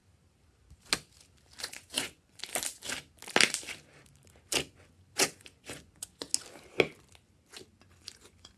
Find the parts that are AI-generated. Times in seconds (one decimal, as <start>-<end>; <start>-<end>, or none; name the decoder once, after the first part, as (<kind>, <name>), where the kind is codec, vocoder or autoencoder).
1.6-2.4 (vocoder, Vocos); 4.7-6.3; 8.0-8.6